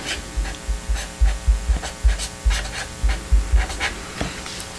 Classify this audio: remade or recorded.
recorded